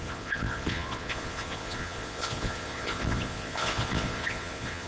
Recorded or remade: remade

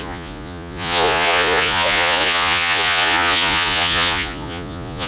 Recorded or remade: remade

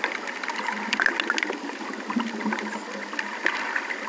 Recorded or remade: recorded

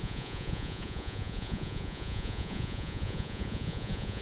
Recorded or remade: remade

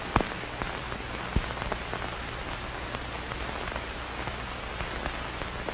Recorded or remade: recorded